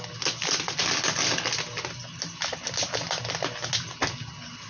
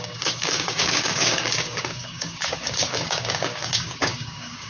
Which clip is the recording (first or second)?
first